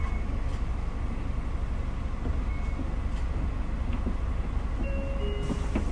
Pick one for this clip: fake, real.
real